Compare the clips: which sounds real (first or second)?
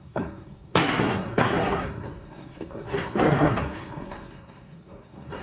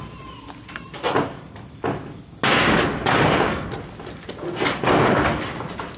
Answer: second